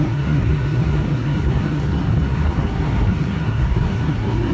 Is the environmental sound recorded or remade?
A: remade